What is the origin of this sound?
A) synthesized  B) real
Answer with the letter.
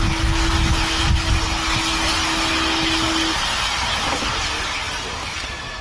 B